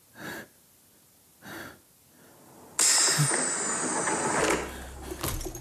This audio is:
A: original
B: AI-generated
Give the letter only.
A